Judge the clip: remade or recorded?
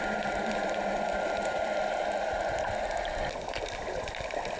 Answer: remade